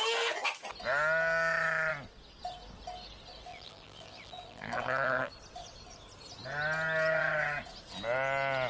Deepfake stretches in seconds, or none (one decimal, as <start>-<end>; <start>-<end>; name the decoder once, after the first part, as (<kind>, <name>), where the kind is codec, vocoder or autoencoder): 3.5-5.3 (vocoder, BigVGAN v2)